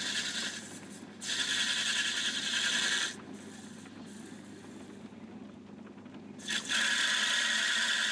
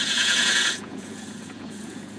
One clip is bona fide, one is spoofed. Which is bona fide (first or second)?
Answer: first